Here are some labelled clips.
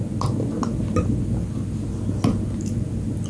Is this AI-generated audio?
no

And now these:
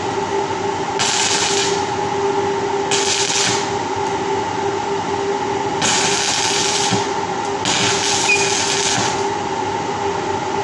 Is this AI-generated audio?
no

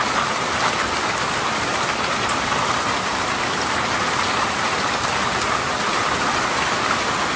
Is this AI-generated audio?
yes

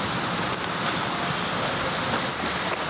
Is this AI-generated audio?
no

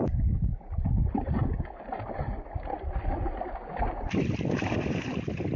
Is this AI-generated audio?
no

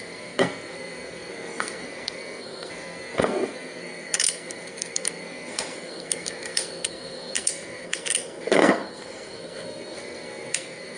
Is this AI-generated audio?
yes